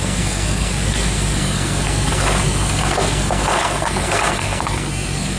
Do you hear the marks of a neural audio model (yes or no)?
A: yes